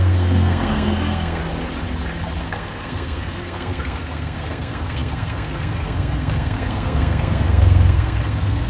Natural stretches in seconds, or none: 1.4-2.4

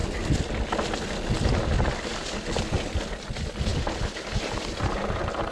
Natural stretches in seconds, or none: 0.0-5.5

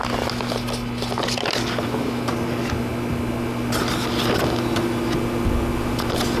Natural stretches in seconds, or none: 0.0-6.4

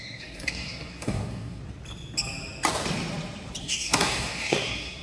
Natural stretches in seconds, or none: 1.6-3.6